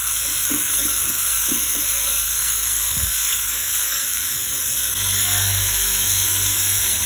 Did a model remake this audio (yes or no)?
yes